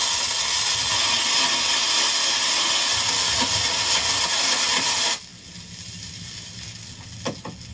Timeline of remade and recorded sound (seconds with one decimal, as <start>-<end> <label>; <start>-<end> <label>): 0.0-7.7 recorded